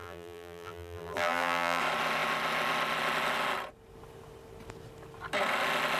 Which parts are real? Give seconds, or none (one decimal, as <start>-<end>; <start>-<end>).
1.8-6.0